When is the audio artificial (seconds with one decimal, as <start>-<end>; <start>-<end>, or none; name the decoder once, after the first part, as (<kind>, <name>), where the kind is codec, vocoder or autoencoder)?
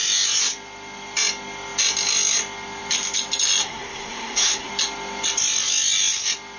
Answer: 3.6-4.7 (codec, SNAC)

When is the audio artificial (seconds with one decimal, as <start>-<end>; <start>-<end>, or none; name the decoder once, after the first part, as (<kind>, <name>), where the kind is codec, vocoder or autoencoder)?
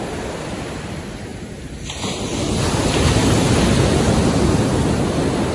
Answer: none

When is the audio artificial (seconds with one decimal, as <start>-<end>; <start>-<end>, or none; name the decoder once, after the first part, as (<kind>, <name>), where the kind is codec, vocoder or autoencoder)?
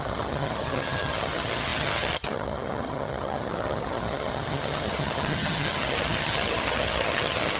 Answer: 0.0-7.6 (vocoder, HiFi-GAN)